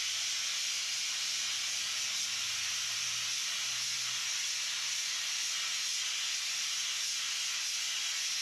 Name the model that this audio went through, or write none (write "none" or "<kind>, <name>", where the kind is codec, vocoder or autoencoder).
none